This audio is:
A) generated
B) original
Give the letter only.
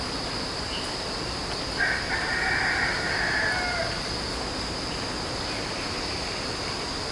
B